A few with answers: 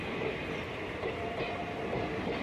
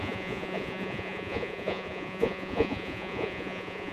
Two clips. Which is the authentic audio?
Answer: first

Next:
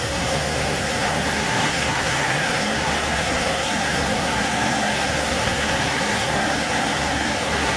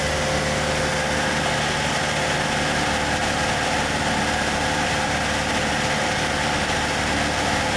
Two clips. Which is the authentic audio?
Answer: second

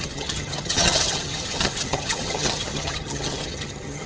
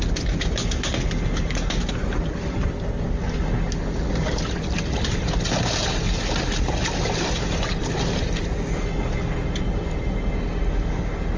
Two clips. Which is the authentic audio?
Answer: second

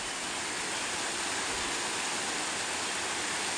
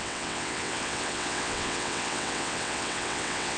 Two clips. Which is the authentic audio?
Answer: first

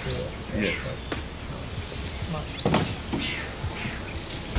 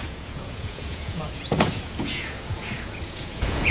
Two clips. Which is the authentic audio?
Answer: first